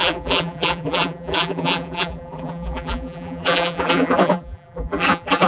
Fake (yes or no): yes